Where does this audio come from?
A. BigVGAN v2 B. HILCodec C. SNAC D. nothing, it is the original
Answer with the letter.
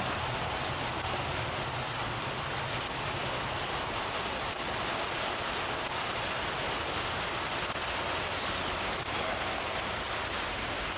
D